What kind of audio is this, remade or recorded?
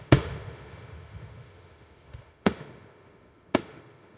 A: remade